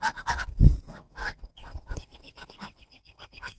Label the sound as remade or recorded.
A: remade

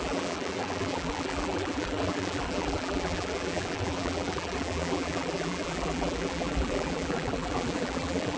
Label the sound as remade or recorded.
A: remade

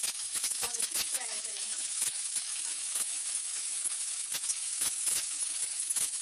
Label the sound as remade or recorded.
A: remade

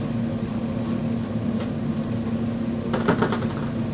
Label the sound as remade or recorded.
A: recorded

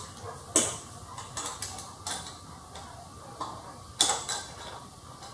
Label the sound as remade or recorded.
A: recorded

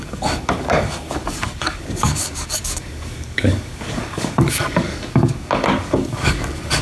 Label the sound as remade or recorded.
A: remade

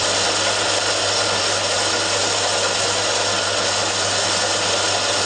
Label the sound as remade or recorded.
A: recorded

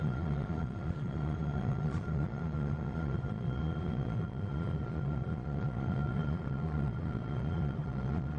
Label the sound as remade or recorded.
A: remade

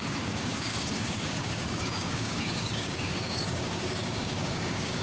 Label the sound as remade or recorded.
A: remade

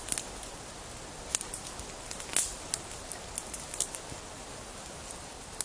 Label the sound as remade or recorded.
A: recorded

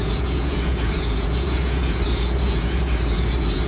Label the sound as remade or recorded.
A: remade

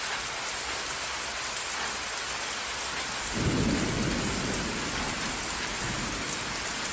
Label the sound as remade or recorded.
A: recorded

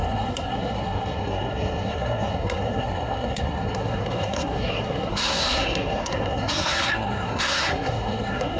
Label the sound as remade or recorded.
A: remade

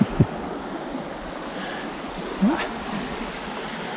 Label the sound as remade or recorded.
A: recorded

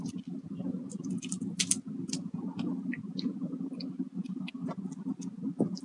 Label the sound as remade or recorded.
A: recorded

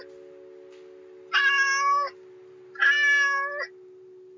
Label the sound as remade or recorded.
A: recorded